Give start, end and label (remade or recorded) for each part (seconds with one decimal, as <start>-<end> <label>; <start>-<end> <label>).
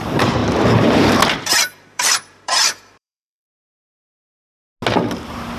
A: 0.0-0.4 remade; 0.4-1.3 recorded; 1.3-4.0 remade; 4.0-5.6 recorded